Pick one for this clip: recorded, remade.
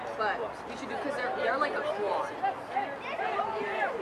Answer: recorded